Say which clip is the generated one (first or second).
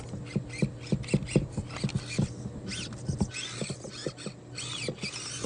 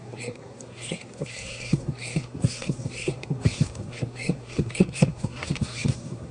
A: second